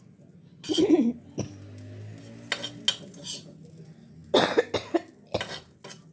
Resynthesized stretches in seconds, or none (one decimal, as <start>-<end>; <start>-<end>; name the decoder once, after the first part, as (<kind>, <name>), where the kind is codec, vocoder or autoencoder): none